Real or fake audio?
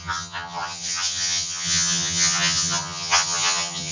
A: fake